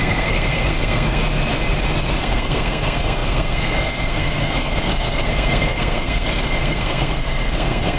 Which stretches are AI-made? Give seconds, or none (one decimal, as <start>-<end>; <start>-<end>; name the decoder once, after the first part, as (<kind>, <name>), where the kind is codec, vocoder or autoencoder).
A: 0.0-1.2 (codec, SNAC); 2.2-8.0